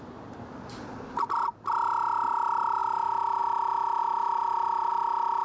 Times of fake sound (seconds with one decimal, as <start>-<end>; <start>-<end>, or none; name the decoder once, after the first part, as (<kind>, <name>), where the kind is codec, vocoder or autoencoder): 4.0-4.9 (vocoder, BigVGAN v2)

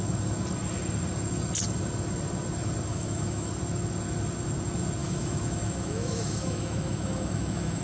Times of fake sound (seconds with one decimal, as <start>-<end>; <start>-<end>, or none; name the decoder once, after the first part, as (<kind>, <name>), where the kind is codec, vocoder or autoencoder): 2.9-3.5 (autoencoder, DAC-VAE); 5.0-7.8

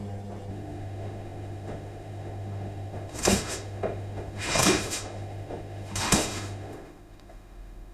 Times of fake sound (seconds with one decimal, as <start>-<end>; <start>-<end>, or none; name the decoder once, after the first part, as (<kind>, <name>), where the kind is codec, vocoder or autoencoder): 0.5-7.9 (autoencoder, DAC-VAE)

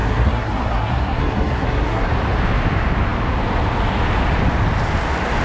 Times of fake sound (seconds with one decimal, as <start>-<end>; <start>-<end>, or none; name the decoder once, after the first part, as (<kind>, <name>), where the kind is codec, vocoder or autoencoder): 0.0-2.1 (codec, SNAC)

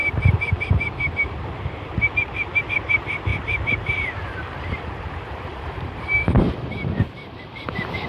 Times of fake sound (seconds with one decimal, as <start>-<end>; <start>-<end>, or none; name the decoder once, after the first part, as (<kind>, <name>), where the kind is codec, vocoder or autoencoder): 0.0-2.6 (vocoder, BigVGAN v2); 3.3-8.1